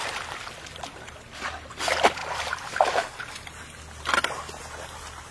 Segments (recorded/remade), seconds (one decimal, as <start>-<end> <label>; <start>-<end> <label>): 0.0-5.3 recorded